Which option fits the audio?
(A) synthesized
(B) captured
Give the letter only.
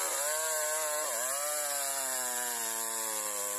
B